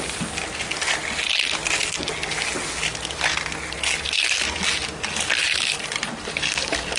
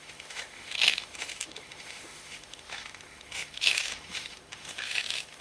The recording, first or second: first